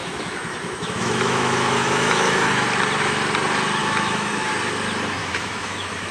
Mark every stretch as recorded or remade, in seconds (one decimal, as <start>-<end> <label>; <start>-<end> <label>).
0.0-2.5 remade; 2.5-3.8 recorded; 3.8-4.5 remade; 4.5-5.2 recorded; 5.2-6.1 remade